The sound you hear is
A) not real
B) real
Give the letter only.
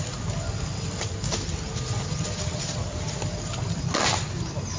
B